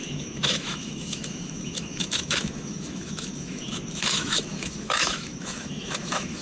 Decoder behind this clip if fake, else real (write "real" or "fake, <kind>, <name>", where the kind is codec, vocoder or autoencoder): fake, autoencoder, DAC-VAE